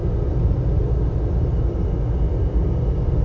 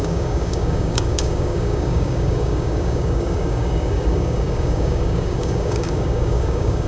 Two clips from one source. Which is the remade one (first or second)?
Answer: second